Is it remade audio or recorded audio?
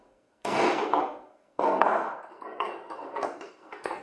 remade